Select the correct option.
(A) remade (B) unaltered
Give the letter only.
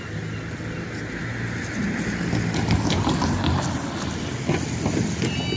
B